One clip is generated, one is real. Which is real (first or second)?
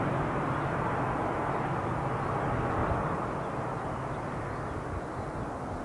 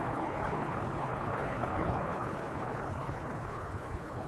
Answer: first